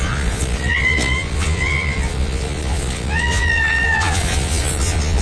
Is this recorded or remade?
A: remade